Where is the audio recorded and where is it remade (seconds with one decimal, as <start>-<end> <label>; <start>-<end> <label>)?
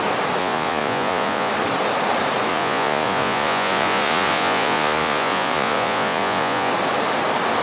0.0-0.4 recorded; 0.4-1.5 remade; 1.5-2.5 recorded; 2.5-6.7 remade; 6.7-7.6 recorded